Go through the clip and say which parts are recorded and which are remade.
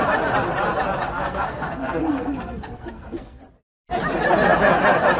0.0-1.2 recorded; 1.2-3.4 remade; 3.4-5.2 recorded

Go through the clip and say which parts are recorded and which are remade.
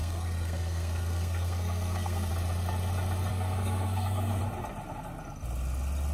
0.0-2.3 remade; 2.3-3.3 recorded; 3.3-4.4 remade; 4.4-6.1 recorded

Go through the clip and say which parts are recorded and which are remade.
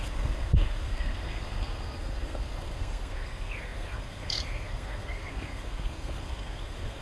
0.0-7.0 remade